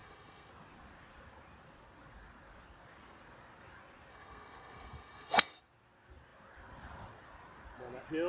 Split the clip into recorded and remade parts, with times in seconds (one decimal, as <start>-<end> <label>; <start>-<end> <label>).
0.0-0.5 remade; 0.5-4.1 recorded; 4.1-5.6 remade; 5.6-8.3 recorded